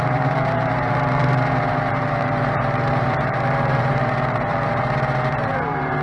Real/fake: fake